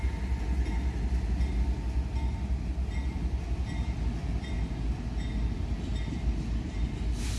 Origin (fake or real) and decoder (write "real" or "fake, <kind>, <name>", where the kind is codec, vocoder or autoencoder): real